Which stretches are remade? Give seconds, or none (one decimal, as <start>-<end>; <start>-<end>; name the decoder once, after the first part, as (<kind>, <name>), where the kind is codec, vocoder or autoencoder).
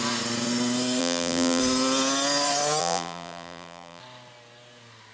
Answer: 1.0-1.6 (vocoder, BigVGAN v2); 2.8-4.0